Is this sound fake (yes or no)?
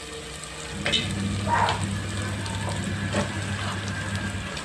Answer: no